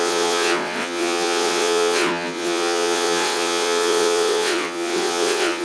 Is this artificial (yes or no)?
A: yes